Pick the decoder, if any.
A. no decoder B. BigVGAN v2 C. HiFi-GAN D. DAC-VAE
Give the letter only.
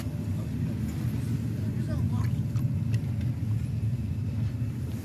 A